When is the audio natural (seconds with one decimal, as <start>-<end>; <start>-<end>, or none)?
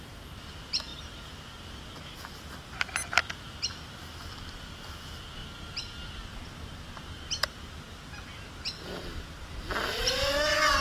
0.0-10.8